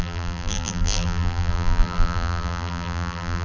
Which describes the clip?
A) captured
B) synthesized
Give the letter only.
B